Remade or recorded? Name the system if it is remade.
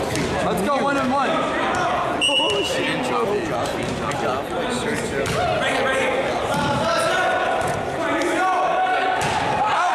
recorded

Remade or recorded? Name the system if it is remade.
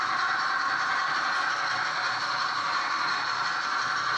remade, vocoder, BigVGAN v2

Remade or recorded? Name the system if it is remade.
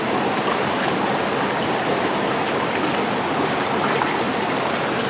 recorded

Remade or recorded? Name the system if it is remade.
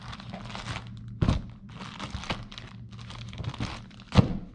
recorded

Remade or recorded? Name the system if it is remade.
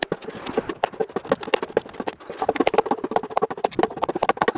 recorded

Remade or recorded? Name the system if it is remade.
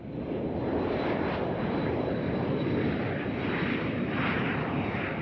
remade, vocoder, BigVGAN v2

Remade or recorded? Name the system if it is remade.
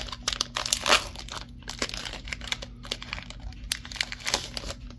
recorded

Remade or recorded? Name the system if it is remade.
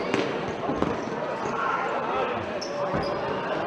recorded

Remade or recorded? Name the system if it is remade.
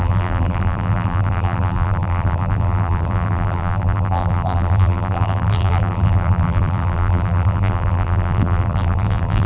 remade, vocoder, BigVGAN v2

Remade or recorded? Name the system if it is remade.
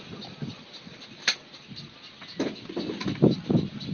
recorded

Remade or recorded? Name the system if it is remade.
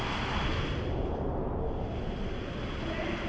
recorded